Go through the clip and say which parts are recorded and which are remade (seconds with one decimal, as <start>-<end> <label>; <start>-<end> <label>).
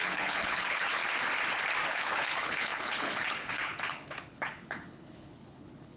0.0-1.0 remade; 1.0-1.9 recorded; 1.9-6.0 remade